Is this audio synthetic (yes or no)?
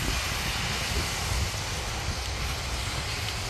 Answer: no